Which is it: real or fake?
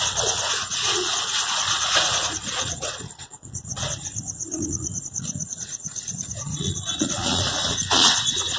fake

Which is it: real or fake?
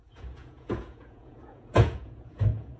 fake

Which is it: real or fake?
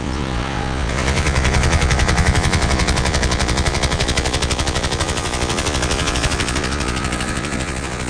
fake